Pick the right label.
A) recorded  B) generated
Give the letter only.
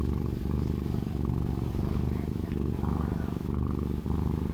B